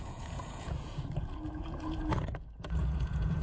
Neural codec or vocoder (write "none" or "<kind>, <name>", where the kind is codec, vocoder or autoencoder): vocoder, Vocos